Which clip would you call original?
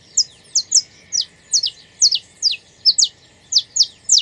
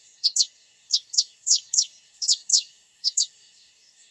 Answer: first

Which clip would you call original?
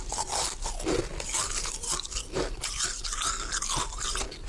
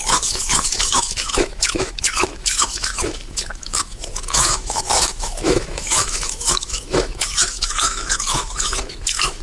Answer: first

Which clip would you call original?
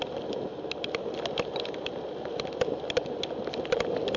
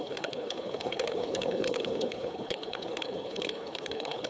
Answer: first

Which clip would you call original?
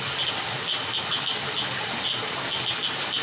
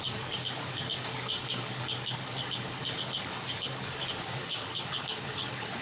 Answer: first